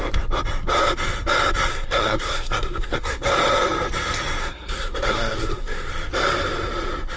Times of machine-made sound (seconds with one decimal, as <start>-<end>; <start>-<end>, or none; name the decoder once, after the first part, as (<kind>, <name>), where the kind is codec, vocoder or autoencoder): 1.7-3.3 (codec, SNAC); 4.4-5.9